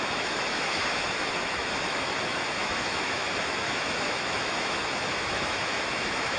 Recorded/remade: remade